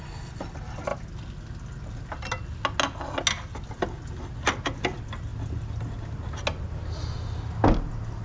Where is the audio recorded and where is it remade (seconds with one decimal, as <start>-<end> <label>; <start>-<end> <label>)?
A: 0.0-8.2 recorded